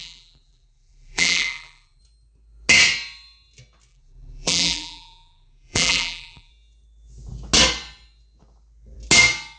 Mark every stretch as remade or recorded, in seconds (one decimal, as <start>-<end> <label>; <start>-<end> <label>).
0.0-2.0 remade; 2.0-3.9 recorded; 3.9-6.5 remade; 6.5-9.6 recorded